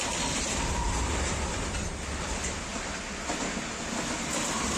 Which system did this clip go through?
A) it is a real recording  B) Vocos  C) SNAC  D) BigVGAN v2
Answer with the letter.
A